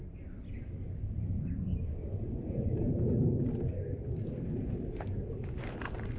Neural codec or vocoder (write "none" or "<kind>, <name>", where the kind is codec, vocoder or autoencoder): none